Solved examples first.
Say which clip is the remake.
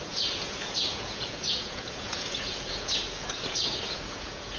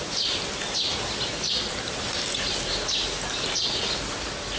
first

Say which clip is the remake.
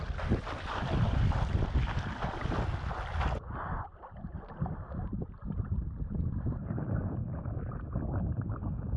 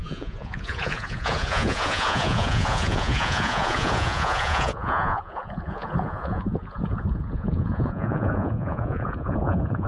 second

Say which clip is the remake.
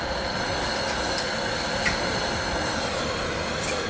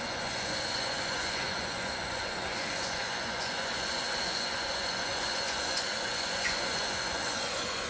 second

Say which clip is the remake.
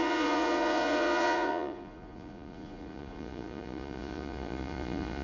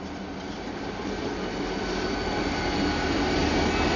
first